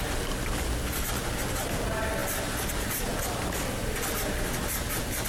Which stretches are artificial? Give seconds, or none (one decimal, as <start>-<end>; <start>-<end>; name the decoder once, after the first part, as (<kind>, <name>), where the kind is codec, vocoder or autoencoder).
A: none